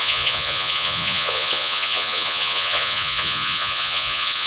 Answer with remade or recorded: remade